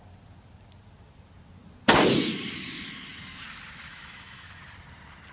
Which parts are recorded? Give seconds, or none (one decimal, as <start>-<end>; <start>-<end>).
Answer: 0.0-3.9; 4.6-5.3

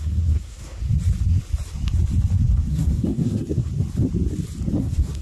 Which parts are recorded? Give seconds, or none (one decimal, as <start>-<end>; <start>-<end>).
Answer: 0.8-2.7; 3.7-4.8

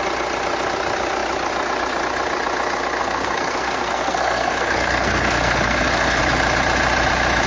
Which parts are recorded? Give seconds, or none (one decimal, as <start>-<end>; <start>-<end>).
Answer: 0.0-3.0; 6.2-7.5

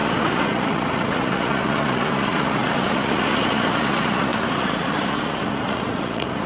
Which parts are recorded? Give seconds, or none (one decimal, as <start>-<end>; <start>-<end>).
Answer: none

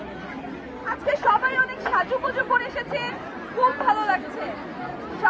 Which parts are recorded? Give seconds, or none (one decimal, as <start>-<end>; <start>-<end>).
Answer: 0.0-5.3